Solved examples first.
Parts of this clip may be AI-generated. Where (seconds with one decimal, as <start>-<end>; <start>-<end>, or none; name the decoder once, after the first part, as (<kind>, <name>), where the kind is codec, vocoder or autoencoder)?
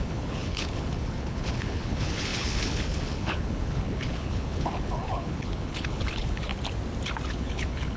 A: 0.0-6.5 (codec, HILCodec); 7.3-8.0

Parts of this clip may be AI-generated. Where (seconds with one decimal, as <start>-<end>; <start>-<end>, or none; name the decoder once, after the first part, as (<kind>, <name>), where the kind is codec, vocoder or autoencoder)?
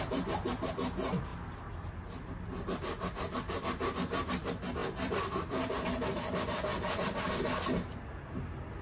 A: 4.8-5.9 (vocoder, BigVGAN v2)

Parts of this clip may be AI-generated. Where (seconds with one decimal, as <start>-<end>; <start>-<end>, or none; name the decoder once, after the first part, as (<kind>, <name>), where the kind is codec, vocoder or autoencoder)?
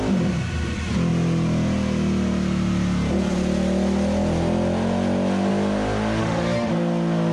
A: 6.2-6.7 (autoencoder, DAC-VAE)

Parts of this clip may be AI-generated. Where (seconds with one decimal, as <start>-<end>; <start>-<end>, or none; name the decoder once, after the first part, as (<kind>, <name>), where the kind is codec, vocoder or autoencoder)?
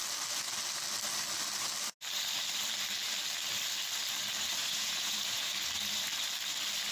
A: 4.6-5.5 (vocoder, Vocos)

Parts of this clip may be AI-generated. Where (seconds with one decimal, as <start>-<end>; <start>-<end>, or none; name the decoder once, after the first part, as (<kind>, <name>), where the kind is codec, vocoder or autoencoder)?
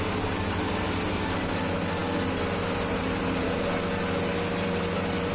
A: none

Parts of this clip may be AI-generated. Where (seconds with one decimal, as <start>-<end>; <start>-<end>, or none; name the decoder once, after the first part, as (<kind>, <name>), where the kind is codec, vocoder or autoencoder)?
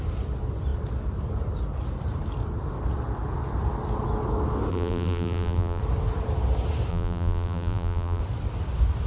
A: 4.7-5.8 (vocoder, BigVGAN v2); 6.9-8.2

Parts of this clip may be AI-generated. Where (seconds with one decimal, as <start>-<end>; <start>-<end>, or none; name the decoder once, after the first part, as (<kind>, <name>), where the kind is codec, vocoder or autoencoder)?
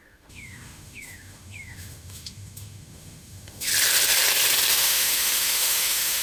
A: 0.0-3.7 (autoencoder, DAC-VAE); 4.7-6.2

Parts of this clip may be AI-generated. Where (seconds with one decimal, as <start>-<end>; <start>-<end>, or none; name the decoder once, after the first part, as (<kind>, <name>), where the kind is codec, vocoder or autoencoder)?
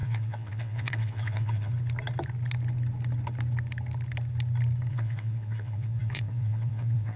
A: 0.0-1.7 (vocoder, WaveNeXt); 4.9-7.2